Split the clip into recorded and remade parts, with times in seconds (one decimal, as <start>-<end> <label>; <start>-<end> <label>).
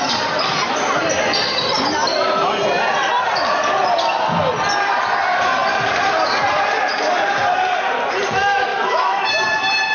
0.0-8.7 recorded; 8.7-9.3 remade; 9.3-9.9 recorded